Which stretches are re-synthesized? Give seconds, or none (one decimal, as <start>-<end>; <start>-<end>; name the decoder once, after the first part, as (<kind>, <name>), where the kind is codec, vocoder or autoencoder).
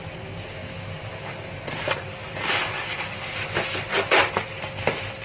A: 2.2-3.4 (vocoder, BigVGAN v2)